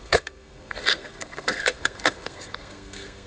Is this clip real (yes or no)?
no